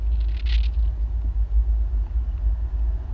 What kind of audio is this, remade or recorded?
recorded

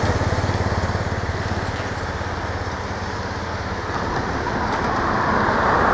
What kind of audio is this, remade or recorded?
recorded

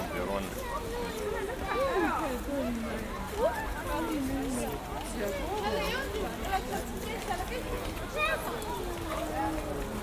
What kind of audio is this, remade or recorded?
recorded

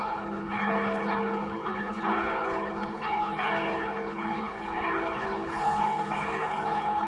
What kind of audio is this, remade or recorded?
remade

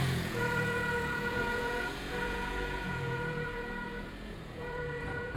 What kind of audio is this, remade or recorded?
remade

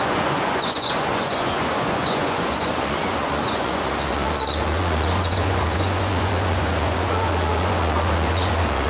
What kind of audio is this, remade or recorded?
remade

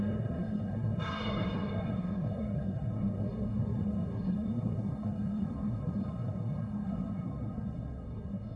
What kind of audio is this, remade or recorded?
remade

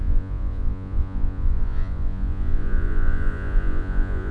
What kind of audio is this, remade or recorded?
remade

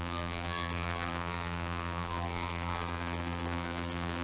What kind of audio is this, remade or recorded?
remade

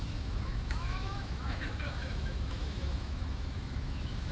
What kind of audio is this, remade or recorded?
remade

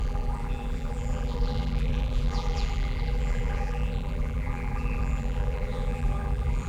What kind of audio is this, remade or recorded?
remade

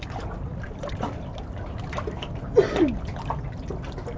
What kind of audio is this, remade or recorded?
recorded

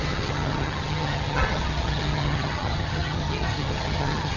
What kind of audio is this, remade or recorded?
remade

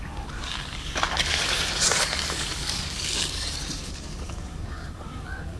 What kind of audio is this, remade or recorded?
remade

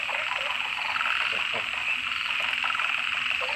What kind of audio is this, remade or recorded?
recorded